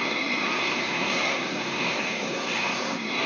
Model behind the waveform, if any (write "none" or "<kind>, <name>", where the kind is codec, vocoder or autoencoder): codec, SNAC